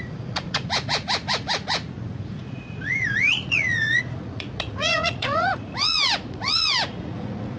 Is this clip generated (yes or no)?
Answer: yes